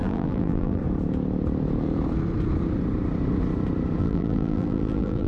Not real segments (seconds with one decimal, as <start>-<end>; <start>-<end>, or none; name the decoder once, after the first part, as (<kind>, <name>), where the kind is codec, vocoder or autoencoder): 0.0-0.8 (vocoder, BigVGAN v2); 4.0-5.3